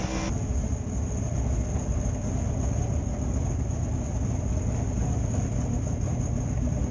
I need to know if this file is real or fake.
real